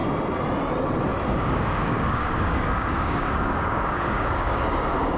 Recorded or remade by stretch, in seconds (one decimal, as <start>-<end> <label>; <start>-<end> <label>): 0.0-1.3 recorded; 1.3-5.2 remade